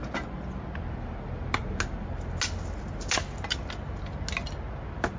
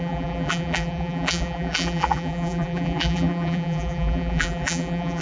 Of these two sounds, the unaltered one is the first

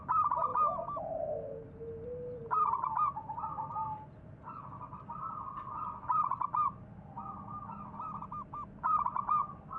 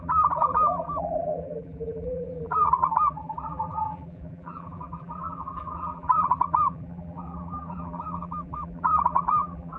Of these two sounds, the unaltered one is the first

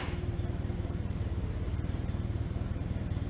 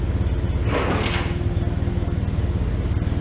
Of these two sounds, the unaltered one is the second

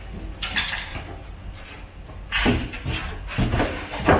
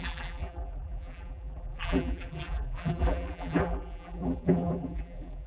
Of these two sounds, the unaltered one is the first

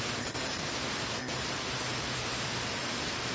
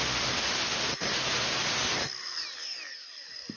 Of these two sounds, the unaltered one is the second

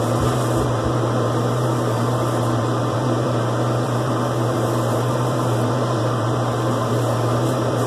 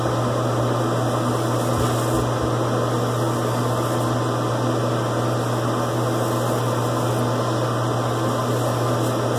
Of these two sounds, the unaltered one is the second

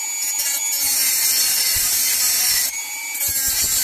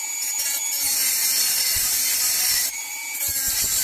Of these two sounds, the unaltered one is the first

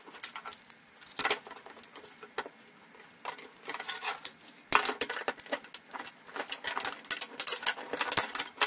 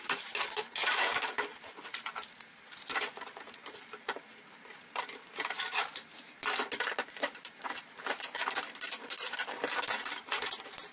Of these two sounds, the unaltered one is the first